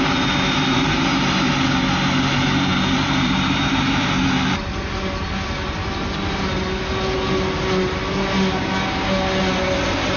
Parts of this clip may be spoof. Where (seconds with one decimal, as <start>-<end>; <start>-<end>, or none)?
none